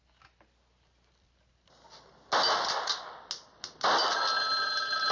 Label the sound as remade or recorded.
recorded